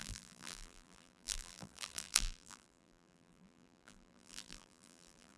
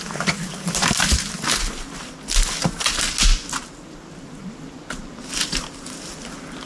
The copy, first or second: first